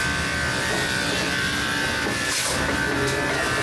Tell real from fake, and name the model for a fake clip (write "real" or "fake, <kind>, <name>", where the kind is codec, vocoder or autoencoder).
real